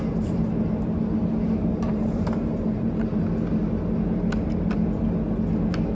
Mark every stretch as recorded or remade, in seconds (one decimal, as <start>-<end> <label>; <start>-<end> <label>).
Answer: 0.0-1.7 recorded; 1.7-3.1 remade; 3.1-5.9 recorded

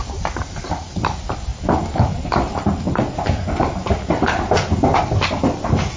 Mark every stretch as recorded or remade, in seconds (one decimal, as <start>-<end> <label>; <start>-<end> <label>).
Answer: 0.0-6.0 recorded

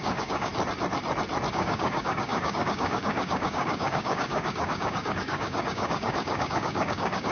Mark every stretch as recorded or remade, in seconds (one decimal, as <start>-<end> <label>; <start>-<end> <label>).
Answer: 0.0-0.5 remade; 0.5-1.5 recorded; 1.5-7.3 remade

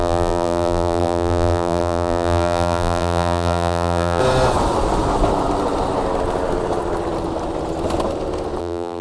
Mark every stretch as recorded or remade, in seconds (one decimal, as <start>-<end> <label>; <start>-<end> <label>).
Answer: 0.0-4.2 remade; 4.2-8.6 recorded; 8.6-9.0 remade